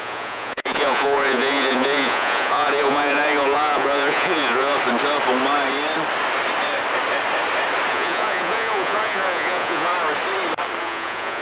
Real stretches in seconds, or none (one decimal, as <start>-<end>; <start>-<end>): 4.7-7.9; 9.9-10.8